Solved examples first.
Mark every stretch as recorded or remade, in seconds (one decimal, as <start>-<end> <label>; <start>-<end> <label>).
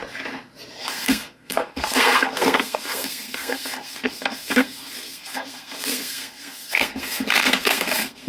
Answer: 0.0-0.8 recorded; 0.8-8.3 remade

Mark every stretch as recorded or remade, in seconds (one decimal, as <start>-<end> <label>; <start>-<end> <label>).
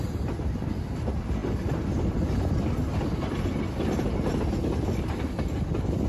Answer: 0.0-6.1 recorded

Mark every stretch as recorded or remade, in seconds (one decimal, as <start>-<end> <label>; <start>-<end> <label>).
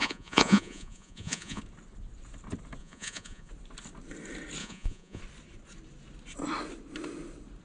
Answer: 0.0-1.6 remade; 1.6-2.8 recorded; 2.8-3.5 remade; 3.5-4.6 recorded; 4.6-5.2 remade; 5.2-7.6 recorded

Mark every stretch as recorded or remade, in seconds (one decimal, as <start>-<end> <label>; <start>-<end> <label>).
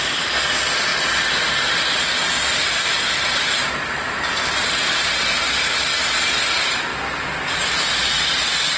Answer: 0.0-0.9 recorded; 0.9-4.2 remade; 4.2-8.8 recorded